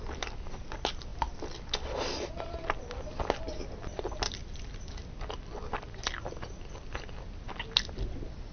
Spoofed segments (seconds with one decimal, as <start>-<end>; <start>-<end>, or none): none